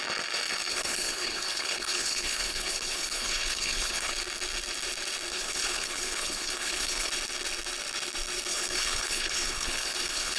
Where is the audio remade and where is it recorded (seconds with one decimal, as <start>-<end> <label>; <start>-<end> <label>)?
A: 0.0-0.7 recorded; 0.7-4.1 remade; 4.1-5.3 recorded; 5.3-7.1 remade; 7.1-8.5 recorded; 8.5-10.4 remade